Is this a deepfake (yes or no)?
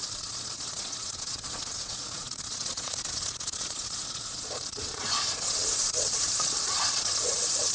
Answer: yes